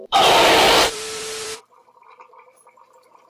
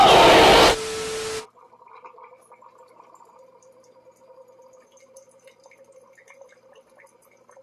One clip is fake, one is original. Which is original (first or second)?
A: second